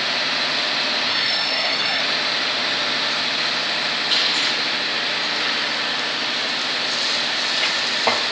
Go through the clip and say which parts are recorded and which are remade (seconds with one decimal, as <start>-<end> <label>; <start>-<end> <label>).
0.0-1.1 recorded; 1.1-2.0 remade; 2.0-8.3 recorded